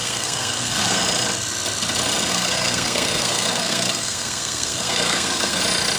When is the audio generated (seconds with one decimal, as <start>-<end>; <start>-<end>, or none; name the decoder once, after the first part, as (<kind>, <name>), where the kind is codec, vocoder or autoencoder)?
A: 0.0-1.0 (codec, SNAC); 2.3-5.6